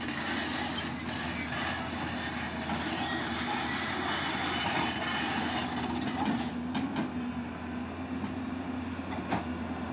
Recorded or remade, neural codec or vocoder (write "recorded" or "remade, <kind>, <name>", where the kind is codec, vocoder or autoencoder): recorded